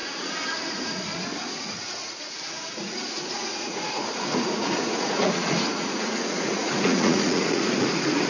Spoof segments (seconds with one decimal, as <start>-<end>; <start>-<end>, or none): 0.0-8.3